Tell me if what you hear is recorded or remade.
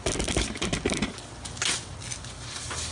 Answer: recorded